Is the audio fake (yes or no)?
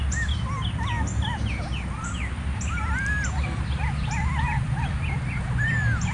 no